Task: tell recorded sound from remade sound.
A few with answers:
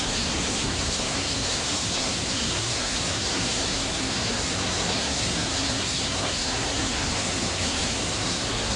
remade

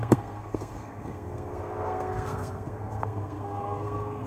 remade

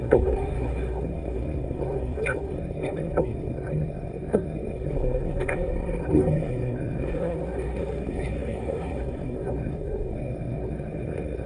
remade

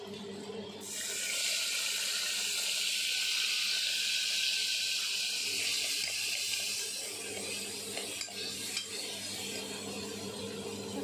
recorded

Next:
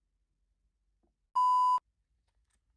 recorded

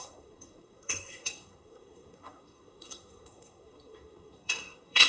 remade